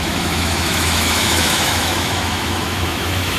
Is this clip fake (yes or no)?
yes